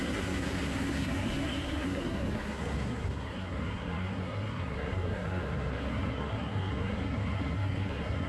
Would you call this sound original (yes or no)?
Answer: no